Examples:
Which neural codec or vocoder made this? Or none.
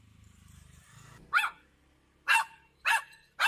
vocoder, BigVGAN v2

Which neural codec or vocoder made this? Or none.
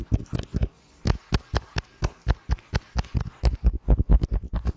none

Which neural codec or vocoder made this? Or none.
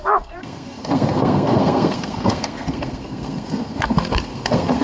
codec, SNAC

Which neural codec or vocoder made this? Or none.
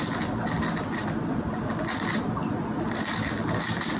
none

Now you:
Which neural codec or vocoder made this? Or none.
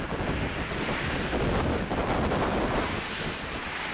none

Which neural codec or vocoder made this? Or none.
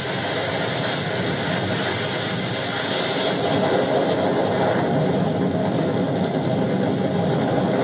none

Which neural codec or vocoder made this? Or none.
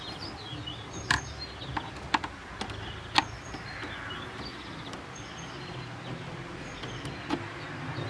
none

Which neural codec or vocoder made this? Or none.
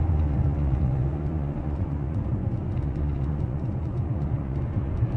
vocoder, Vocos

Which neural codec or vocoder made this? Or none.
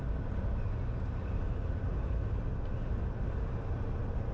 none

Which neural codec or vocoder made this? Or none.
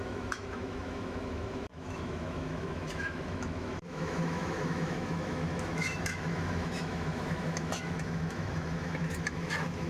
autoencoder, DAC-VAE